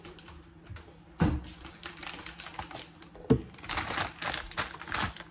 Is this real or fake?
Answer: real